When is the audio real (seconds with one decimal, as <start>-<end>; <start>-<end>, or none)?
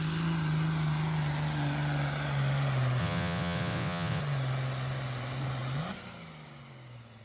0.0-3.0; 4.2-7.2